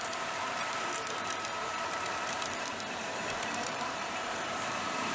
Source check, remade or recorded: remade